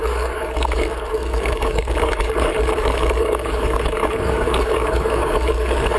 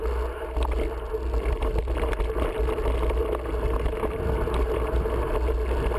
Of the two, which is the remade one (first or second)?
first